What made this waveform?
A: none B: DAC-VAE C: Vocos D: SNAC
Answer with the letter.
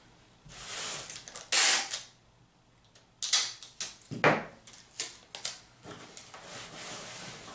A